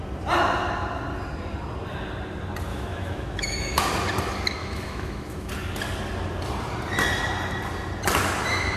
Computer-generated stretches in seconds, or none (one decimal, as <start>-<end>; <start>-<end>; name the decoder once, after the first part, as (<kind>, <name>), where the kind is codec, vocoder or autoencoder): 2.7-3.8 (autoencoder, DAC-VAE); 4.6-5.5